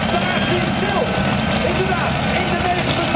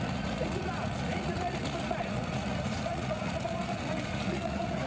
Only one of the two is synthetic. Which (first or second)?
second